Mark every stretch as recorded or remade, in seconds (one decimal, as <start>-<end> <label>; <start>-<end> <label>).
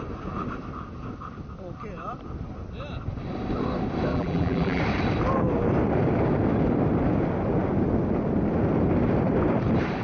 0.0-4.1 recorded; 4.1-4.8 remade; 4.8-10.0 recorded